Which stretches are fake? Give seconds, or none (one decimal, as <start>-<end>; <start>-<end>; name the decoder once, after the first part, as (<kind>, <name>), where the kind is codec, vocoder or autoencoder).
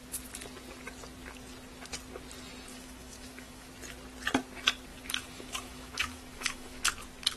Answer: 2.7-3.7 (autoencoder, DAC-VAE); 4.9-6.8